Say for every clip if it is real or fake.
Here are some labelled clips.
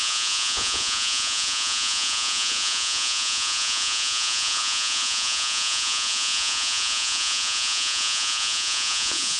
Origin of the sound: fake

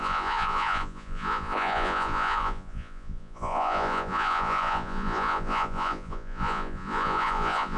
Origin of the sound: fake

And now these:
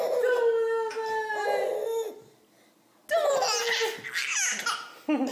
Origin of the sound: real